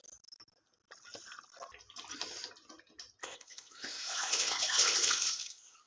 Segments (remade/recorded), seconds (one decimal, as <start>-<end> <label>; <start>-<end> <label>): 0.0-3.2 recorded; 3.2-5.9 remade